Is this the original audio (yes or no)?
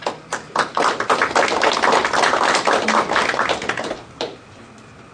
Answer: yes